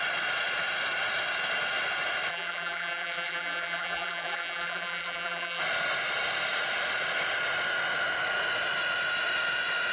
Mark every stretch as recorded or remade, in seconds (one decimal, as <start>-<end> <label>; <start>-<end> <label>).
0.0-2.3 recorded; 2.3-5.6 remade; 5.6-9.9 recorded